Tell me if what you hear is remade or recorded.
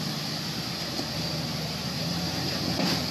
recorded